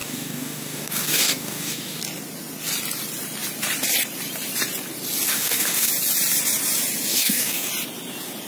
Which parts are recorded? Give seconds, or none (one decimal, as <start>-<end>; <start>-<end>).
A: 2.0-5.3; 5.9-7.1; 7.7-8.5